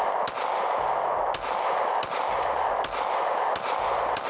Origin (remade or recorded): recorded